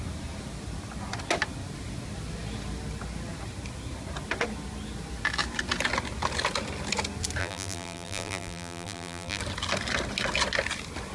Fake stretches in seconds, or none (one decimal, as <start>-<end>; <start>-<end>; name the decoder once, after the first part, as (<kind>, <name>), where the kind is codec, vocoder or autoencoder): 7.4-9.4 (vocoder, BigVGAN v2)

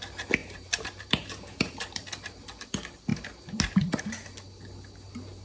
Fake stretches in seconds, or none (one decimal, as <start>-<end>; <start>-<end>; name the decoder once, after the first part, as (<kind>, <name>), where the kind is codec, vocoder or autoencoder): 0.4-2.1 (vocoder, BigVGAN v2)

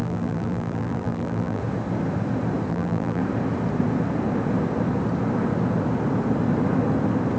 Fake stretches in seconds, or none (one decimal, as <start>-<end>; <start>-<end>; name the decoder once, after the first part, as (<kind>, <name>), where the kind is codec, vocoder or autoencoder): 0.0-1.6 (vocoder, BigVGAN v2); 2.7-3.2

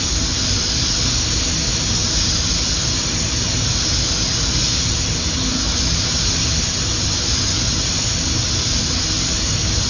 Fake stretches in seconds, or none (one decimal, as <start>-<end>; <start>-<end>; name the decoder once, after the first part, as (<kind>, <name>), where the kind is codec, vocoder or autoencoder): 1.7-2.3 (vocoder, BigVGAN v2)